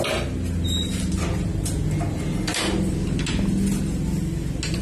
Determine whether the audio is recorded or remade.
recorded